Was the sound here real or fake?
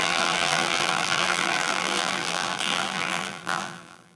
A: fake